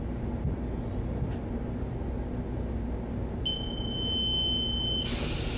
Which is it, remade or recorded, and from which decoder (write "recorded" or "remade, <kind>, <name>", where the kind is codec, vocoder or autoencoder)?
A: recorded